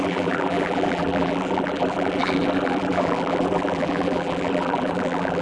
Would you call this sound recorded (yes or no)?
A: no